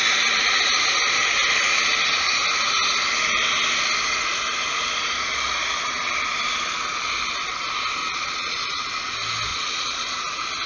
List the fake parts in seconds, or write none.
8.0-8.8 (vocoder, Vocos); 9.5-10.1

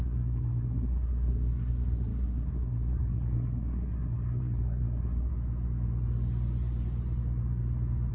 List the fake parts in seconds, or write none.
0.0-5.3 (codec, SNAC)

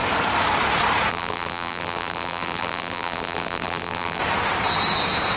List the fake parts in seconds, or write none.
1.1-4.2 (vocoder, BigVGAN v2)